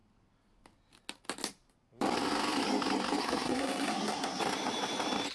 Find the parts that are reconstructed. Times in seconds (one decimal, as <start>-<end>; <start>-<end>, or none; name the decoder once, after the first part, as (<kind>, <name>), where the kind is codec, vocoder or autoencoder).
3.2-4.4 (codec, SNAC)